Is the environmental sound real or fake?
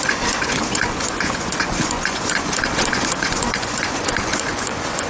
fake